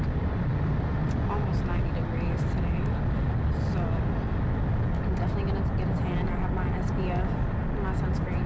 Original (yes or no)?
yes